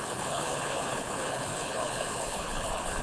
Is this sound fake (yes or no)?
yes